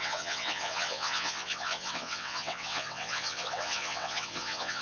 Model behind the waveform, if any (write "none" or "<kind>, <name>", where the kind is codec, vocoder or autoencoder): vocoder, WaveNeXt